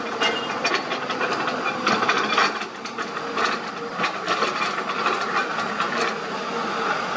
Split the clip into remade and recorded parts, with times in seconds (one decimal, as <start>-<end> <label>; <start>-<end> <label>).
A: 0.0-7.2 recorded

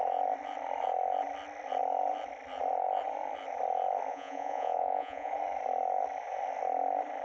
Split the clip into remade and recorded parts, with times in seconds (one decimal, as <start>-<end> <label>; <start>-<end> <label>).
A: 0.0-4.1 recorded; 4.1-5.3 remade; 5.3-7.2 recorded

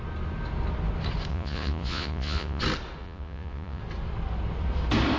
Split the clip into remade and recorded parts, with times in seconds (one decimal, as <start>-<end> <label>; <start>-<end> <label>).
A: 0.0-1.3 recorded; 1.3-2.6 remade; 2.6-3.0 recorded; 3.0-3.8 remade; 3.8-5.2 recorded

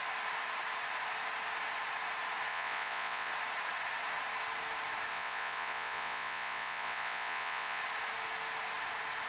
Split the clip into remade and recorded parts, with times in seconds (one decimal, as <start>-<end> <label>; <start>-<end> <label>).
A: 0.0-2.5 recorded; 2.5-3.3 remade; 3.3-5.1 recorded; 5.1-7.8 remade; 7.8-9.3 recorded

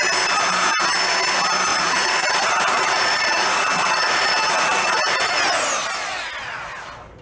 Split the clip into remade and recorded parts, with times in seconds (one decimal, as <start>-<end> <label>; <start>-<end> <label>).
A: 0.0-1.7 recorded; 1.7-5.6 remade; 5.6-7.2 recorded

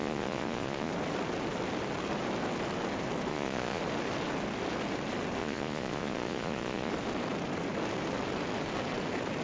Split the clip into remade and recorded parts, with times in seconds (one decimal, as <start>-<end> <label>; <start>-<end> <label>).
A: 0.0-0.9 remade; 0.9-3.3 recorded; 3.3-3.8 remade; 3.8-5.4 recorded; 5.4-6.9 remade; 6.9-9.4 recorded